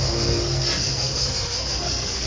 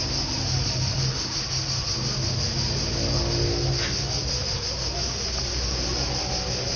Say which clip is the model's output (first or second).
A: first